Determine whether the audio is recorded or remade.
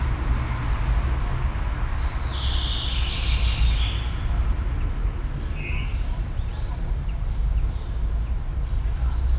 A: recorded